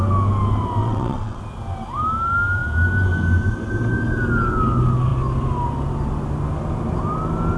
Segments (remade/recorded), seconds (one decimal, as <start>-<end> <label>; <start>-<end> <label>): 0.0-0.8 recorded; 0.8-1.4 remade; 1.4-7.6 recorded